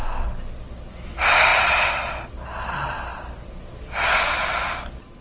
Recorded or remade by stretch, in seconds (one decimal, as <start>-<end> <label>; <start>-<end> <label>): 0.0-5.2 recorded